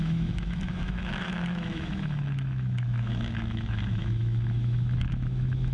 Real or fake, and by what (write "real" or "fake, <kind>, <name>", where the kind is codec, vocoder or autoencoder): fake, autoencoder, DAC-VAE